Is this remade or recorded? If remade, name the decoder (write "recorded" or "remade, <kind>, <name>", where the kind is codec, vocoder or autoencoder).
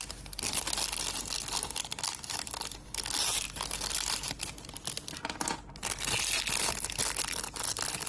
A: recorded